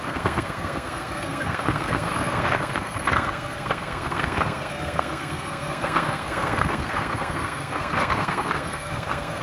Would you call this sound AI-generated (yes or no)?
yes